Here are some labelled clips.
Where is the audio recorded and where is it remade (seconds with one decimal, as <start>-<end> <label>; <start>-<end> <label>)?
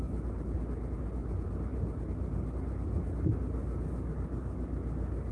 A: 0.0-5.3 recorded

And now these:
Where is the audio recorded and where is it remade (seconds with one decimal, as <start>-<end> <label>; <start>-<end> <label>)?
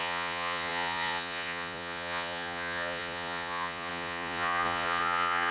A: 0.0-5.5 remade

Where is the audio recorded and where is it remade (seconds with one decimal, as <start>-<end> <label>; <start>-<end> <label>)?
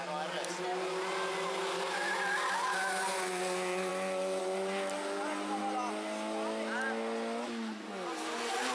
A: 0.0-8.7 recorded